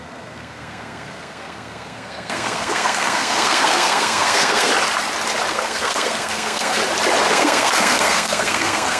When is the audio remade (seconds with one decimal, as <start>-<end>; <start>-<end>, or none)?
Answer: 0.0-4.7; 5.5-6.8; 7.3-9.0